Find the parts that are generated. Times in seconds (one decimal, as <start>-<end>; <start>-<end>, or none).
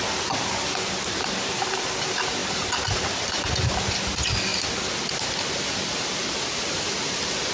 none